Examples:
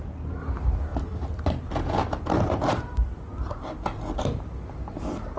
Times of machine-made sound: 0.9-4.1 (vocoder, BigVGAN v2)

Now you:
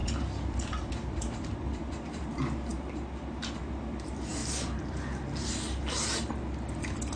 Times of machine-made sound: 0.0-2.7 (vocoder, BigVGAN v2); 3.6-4.4; 6.7-7.2